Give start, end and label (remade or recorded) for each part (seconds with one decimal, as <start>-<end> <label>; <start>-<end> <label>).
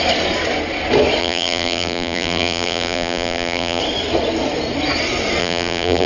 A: 0.0-1.2 recorded; 1.2-3.8 remade; 3.8-5.4 recorded; 5.4-6.1 remade